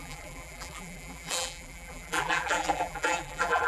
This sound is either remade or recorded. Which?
remade